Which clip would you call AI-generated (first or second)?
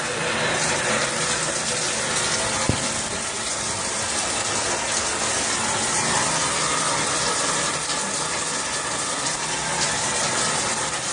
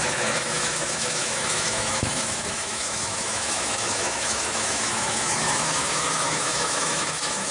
second